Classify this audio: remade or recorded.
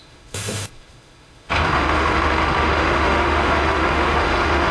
remade